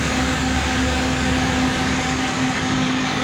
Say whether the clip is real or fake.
fake